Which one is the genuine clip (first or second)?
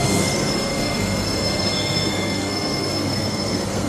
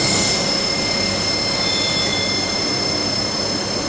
second